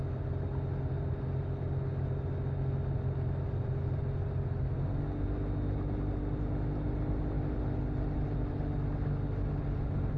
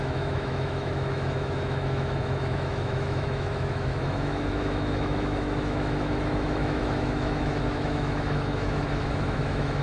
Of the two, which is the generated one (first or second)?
second